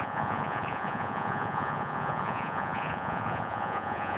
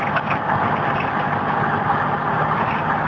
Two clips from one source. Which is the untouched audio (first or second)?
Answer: second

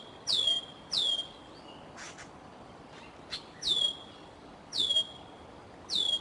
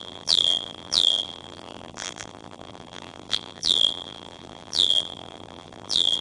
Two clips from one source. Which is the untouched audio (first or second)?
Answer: first